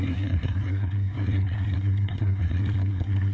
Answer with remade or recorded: remade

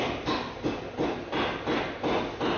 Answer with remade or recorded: recorded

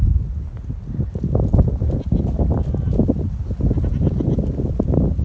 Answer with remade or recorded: recorded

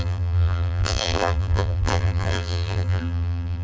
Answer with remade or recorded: remade